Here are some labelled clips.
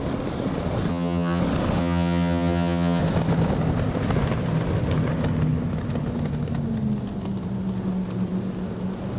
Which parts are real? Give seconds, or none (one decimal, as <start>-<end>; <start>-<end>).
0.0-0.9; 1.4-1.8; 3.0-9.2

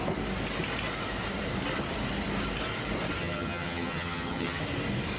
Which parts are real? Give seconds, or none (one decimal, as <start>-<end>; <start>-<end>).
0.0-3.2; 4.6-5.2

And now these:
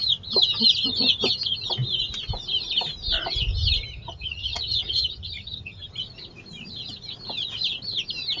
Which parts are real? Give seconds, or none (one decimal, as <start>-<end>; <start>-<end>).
0.0-3.9; 5.9-8.4

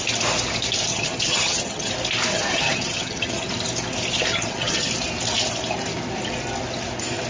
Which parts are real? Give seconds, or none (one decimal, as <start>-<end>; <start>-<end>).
0.0-0.9; 1.9-2.3; 3.5-4.3; 4.9-7.3